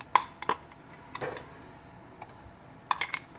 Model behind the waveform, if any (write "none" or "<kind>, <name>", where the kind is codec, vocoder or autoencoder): none